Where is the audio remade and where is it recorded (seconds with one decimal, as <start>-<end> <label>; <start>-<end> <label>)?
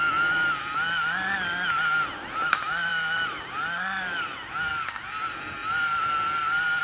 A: 0.0-6.8 recorded